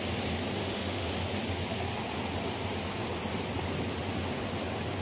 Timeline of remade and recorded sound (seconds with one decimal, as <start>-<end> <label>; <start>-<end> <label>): 0.0-0.6 recorded; 0.6-1.1 remade; 1.1-5.0 recorded